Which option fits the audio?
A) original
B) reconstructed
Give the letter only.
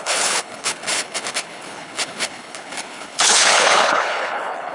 B